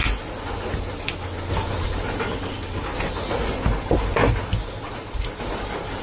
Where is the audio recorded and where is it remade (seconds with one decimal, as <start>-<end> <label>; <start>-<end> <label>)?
0.0-1.5 recorded; 1.5-2.9 remade; 2.9-3.8 recorded; 3.8-4.2 remade; 4.2-5.4 recorded; 5.4-6.0 remade